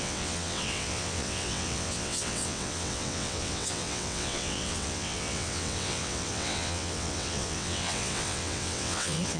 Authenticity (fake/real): fake